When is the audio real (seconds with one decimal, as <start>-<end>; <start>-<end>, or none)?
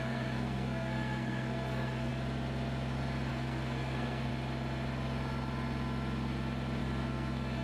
2.1-3.3; 4.3-6.8